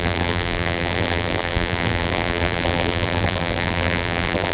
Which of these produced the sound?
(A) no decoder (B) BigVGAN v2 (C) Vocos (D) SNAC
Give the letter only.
B